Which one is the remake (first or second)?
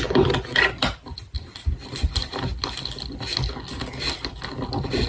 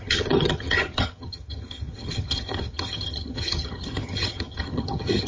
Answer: second